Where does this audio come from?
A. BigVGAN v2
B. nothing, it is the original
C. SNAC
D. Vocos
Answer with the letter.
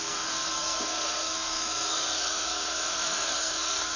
C